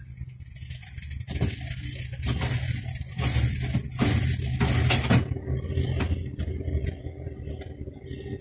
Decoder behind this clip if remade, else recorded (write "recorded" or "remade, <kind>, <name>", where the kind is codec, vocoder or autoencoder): recorded